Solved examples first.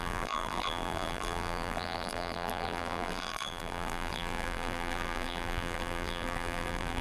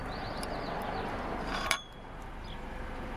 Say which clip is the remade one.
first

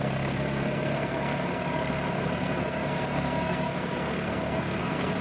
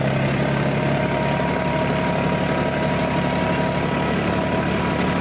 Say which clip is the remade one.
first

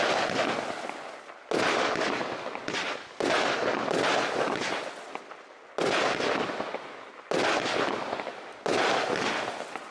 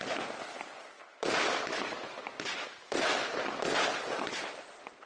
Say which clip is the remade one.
second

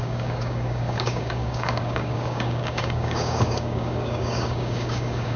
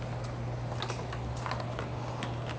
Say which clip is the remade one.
first